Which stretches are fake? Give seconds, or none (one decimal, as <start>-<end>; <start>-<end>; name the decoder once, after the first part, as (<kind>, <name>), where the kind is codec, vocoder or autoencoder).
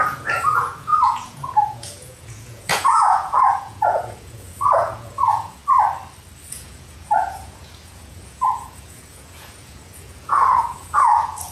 0.0-5.6 (vocoder, Vocos); 6.5-11.5